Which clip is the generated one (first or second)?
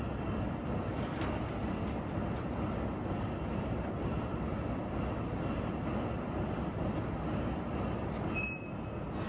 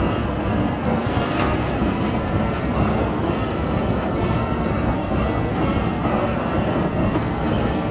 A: second